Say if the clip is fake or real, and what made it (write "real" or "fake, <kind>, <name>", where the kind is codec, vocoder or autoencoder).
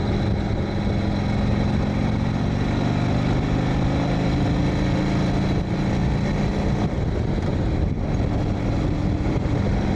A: real